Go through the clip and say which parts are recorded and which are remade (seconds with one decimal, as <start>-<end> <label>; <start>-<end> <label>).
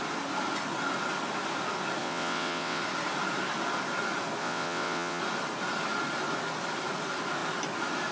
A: 0.0-2.0 recorded; 2.0-2.8 remade; 2.8-4.4 recorded; 4.4-5.2 remade; 5.2-8.1 recorded